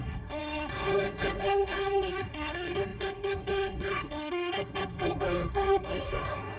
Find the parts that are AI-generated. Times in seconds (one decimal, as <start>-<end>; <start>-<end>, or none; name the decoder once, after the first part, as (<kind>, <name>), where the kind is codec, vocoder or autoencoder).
0.0-6.6 (codec, SNAC)